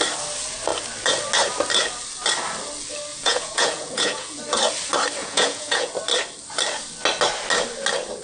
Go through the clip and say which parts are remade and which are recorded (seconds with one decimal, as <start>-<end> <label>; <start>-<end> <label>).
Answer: 0.0-3.1 recorded; 3.1-4.4 remade; 4.4-5.2 recorded; 5.2-5.9 remade; 5.9-8.2 recorded